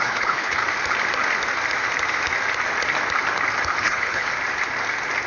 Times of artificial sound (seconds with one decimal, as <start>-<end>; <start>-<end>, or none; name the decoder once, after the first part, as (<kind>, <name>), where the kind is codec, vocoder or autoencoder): 0.0-0.6 (codec, HILCodec); 3.8-4.3